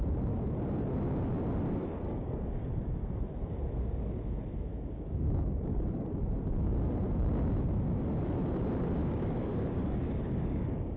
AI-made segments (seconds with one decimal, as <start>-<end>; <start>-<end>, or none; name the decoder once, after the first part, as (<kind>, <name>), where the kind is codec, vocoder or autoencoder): 1.8-3.2 (codec, DAC); 4.7-6.2; 9.0-11.0